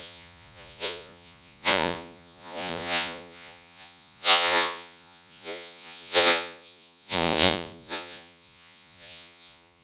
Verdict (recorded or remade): remade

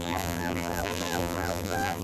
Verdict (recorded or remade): remade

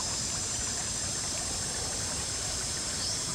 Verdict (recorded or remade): remade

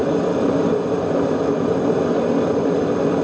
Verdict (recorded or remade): recorded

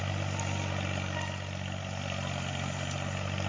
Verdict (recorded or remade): recorded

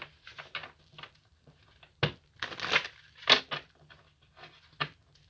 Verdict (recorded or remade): recorded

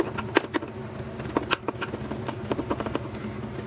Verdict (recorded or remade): recorded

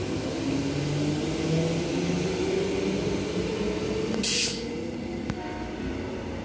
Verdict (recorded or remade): recorded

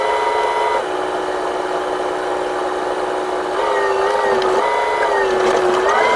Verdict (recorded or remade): recorded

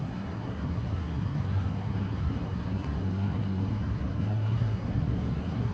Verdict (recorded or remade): remade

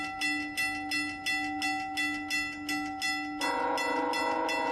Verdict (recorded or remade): recorded